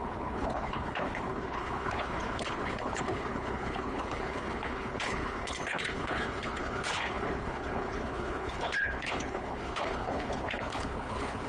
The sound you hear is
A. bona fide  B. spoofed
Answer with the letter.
B